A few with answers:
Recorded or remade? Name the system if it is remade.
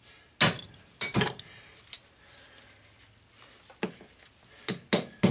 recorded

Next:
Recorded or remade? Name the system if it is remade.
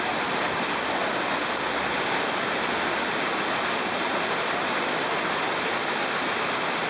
recorded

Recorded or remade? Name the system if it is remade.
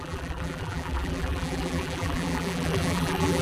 remade, vocoder, BigVGAN v2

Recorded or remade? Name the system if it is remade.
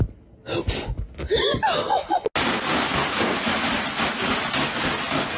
recorded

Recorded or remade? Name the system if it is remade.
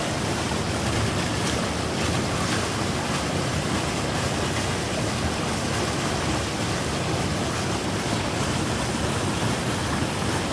recorded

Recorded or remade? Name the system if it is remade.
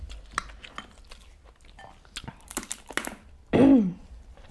recorded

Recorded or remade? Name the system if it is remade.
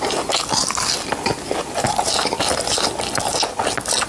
recorded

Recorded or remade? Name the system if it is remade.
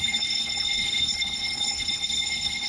remade, codec, HILCodec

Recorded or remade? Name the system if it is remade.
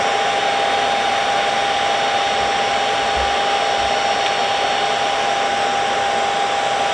recorded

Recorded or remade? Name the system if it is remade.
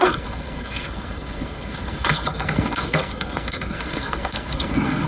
remade, codec, SNAC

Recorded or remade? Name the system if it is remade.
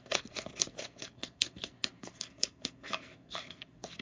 remade, codec, SNAC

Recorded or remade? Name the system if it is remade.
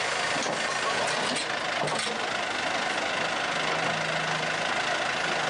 recorded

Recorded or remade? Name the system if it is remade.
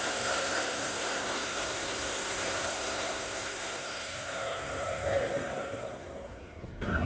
remade, codec, SNAC